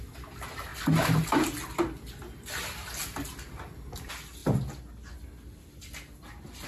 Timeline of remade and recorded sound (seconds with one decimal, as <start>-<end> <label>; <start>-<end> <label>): 0.0-6.7 recorded